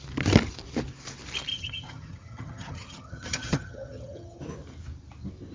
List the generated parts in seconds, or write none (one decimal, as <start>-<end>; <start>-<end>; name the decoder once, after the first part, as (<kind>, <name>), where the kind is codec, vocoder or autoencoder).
1.5-4.4 (vocoder, HiFi-GAN)